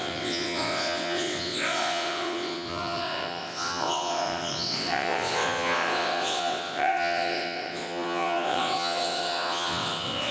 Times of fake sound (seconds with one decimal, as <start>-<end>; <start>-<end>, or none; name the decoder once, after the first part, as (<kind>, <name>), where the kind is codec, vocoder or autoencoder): 0.0-10.3 (vocoder, WaveNeXt)